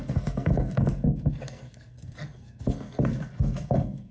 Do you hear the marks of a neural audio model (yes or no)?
yes